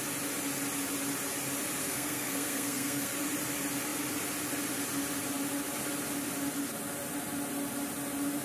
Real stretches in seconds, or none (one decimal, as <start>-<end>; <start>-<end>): 0.0-1.8; 3.1-8.4

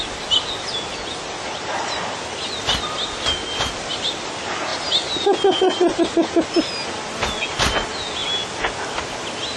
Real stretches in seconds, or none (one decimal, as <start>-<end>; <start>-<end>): 0.0-9.6